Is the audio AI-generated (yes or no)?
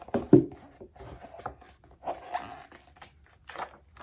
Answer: no